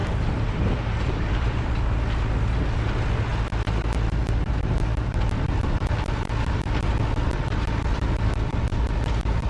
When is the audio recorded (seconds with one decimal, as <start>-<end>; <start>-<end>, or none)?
1.7-9.5